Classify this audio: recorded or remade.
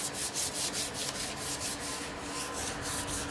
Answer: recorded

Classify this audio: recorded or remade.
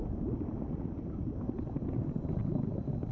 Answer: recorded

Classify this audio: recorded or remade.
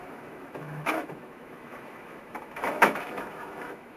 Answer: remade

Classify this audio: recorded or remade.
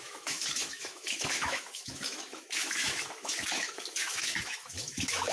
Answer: remade